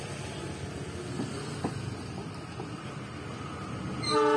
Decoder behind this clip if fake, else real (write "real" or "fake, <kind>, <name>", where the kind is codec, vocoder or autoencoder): real